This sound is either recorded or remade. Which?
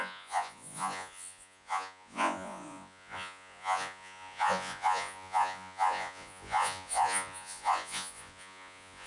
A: remade